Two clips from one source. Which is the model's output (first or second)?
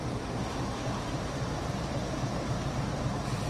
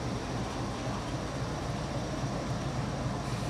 first